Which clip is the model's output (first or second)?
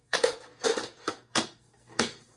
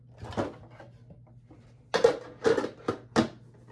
first